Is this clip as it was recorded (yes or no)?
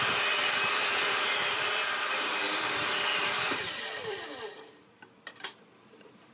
no